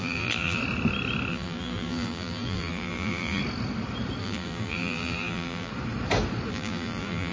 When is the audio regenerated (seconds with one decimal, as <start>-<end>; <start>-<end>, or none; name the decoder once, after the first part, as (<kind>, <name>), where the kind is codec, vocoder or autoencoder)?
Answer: 0.0-0.6 (vocoder, BigVGAN v2); 1.3-3.4; 4.2-5.7; 6.5-7.3